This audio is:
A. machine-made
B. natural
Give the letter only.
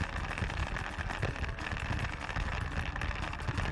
B